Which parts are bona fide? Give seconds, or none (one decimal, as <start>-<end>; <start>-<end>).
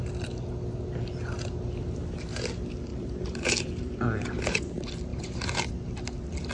0.0-2.9; 4.4-5.1; 5.7-6.5